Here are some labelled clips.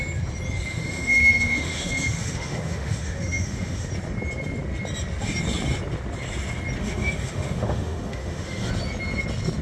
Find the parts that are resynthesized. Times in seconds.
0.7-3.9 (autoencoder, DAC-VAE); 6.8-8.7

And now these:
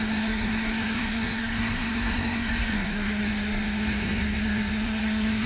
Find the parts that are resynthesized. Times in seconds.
0.0-5.5 (codec, SNAC)

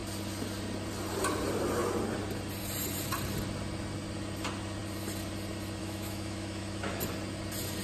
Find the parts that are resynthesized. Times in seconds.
5.8-7.0 (autoencoder, DAC-VAE)

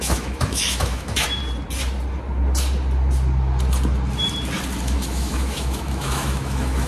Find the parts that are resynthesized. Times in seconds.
0.0-1.4 (autoencoder, DAC-VAE); 4.8-6.9